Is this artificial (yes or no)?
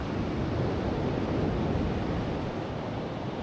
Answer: no